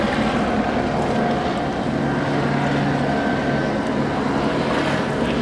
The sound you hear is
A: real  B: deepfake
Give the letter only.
A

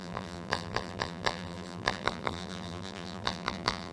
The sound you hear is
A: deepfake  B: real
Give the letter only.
A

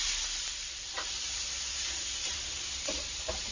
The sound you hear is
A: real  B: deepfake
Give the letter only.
A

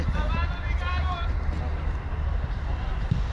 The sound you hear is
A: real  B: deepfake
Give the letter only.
A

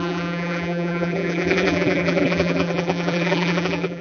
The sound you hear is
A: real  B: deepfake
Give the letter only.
B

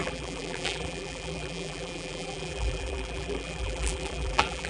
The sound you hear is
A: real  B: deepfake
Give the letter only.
B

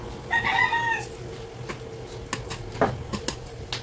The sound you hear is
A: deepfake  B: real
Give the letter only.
B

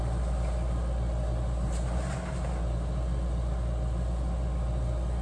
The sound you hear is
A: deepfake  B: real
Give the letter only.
B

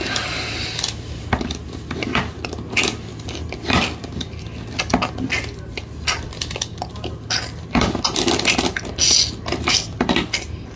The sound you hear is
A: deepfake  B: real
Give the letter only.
B